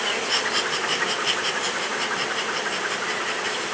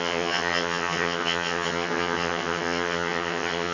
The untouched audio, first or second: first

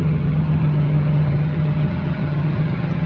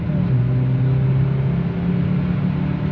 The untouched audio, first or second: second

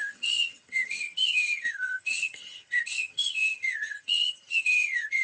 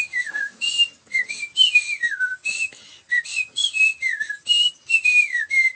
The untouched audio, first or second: second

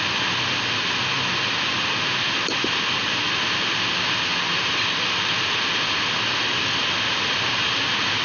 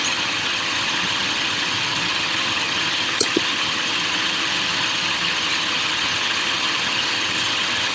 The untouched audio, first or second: first